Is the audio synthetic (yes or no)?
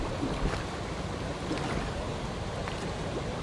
no